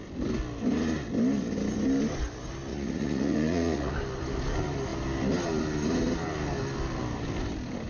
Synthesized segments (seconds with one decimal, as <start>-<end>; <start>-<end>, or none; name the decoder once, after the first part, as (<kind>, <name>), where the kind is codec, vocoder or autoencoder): 2.7-3.9 (vocoder, Vocos)